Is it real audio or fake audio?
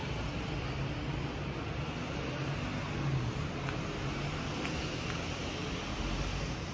real